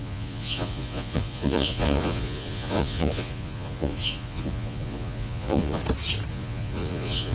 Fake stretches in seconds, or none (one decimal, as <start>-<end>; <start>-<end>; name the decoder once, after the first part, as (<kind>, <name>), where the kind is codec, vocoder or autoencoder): 0.0-5.8 (vocoder, Vocos); 6.3-7.3